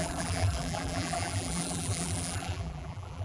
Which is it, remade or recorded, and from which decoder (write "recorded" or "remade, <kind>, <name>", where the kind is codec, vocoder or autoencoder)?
remade, vocoder, BigVGAN v2